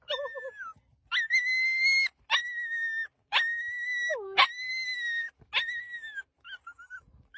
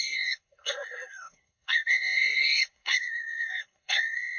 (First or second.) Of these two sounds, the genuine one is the first